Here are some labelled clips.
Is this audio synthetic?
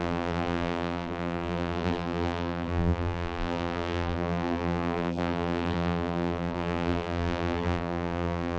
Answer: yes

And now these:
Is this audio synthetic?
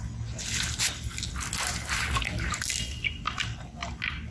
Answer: no